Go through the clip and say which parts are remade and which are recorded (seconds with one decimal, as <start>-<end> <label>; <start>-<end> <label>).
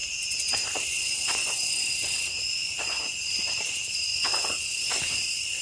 0.0-3.4 remade; 3.4-4.1 recorded; 4.1-4.9 remade; 4.9-5.6 recorded